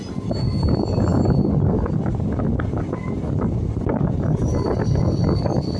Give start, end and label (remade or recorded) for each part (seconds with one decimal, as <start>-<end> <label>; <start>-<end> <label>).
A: 0.0-5.8 recorded